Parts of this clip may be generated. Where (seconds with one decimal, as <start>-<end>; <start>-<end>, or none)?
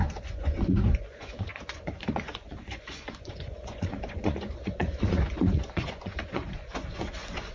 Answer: 0.0-7.5